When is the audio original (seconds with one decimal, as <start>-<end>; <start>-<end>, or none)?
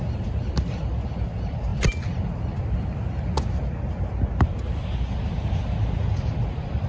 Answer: 0.0-6.9